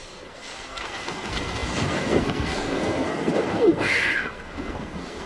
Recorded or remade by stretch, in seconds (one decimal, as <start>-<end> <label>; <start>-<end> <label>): 0.0-5.3 remade